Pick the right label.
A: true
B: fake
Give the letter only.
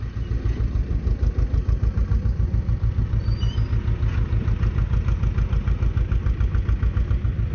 A